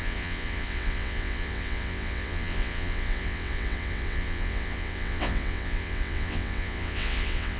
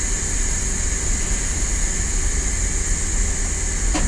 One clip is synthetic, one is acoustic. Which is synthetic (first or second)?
first